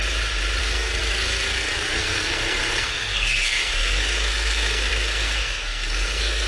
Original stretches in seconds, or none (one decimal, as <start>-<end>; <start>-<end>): 0.0-0.6